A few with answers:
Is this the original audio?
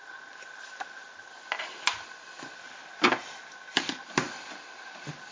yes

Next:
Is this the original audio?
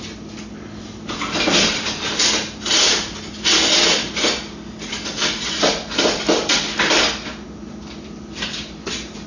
yes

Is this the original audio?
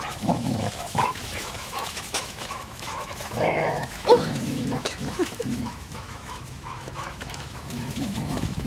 no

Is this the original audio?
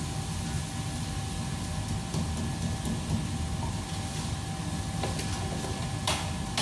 yes